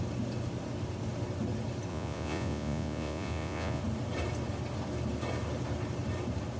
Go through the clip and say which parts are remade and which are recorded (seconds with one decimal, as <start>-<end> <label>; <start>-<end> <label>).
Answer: 0.0-1.9 recorded; 1.9-3.8 remade; 3.8-6.6 recorded